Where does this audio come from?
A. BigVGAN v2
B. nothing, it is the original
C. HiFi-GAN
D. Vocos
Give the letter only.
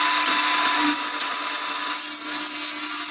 B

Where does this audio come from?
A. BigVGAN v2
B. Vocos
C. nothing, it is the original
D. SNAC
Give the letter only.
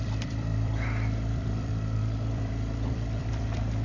A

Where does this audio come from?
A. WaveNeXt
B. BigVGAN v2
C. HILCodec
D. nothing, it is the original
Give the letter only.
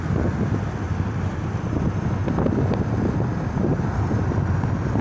D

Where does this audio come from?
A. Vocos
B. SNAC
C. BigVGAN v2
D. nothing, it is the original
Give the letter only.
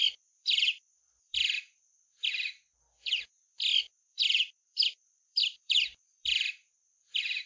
C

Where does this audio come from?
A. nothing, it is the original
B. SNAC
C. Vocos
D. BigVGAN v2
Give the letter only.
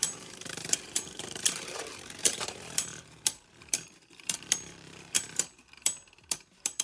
D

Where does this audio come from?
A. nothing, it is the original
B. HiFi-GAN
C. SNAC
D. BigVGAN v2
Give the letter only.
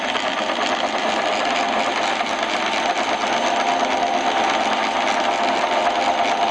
A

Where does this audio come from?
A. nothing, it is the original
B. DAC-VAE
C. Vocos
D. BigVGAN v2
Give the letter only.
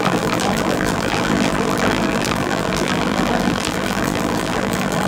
D